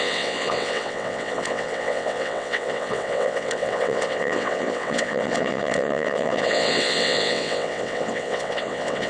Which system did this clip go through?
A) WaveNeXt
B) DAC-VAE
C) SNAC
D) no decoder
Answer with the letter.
A